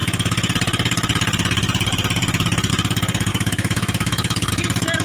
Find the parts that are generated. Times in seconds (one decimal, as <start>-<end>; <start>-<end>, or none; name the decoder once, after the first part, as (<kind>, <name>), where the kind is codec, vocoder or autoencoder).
3.3-4.5 (autoencoder, DAC-VAE)